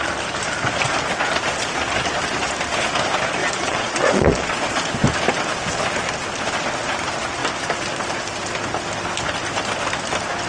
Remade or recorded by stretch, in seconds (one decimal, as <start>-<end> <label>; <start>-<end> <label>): 0.0-3.4 recorded; 3.4-4.9 remade; 4.9-10.5 recorded

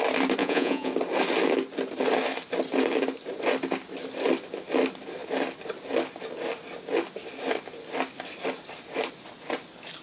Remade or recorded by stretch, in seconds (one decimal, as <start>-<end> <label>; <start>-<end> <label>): 0.0-0.4 recorded; 0.4-0.9 remade; 0.9-10.0 recorded

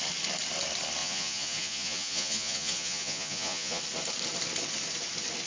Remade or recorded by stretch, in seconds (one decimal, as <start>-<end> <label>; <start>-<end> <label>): 0.0-1.0 recorded; 1.0-3.8 remade; 3.8-5.5 recorded

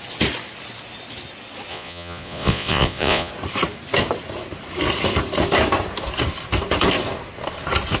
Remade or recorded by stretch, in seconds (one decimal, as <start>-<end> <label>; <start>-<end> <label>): 0.0-1.7 recorded; 1.7-3.3 remade; 3.3-8.0 recorded

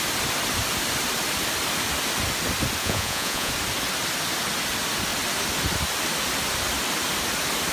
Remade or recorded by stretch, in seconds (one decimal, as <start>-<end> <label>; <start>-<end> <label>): 0.0-2.8 recorded; 2.8-3.5 remade; 3.5-7.7 recorded

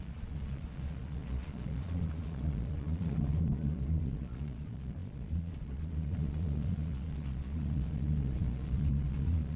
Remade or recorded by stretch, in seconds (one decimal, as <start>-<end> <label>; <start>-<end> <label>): 0.0-9.6 remade